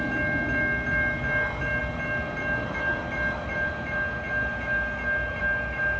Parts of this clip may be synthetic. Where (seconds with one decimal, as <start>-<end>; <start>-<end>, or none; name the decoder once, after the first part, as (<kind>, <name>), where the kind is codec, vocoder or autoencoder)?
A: none

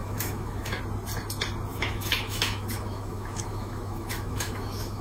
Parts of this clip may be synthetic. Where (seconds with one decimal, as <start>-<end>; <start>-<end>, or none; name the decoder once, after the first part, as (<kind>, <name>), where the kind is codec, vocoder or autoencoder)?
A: 0.0-0.8 (autoencoder, DAC-VAE); 1.7-5.0

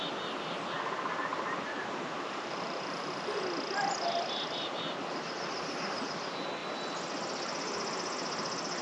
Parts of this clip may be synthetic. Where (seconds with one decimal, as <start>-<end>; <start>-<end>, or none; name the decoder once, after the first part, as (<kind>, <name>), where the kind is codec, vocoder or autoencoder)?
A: 1.3-3.4 (vocoder, BigVGAN v2)

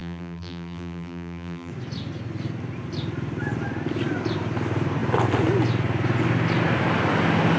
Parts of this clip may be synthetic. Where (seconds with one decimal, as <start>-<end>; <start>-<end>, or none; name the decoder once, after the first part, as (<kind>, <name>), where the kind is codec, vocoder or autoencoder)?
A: 0.0-1.7 (vocoder, BigVGAN v2)

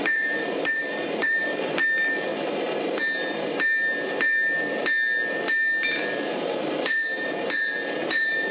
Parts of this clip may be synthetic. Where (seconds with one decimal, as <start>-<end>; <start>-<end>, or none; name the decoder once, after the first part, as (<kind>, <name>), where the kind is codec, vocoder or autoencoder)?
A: 0.0-1.8 (vocoder, BigVGAN v2); 6.6-8.5